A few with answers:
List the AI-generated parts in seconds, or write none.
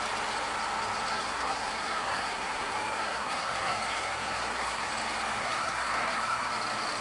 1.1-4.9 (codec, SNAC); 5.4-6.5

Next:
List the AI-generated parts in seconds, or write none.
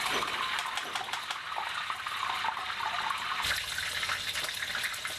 none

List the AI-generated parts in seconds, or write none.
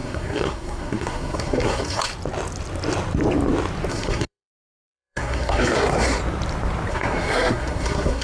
0.0-2.1 (codec, SNAC); 3.9-6.2; 6.9-8.2